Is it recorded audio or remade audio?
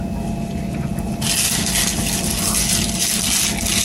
recorded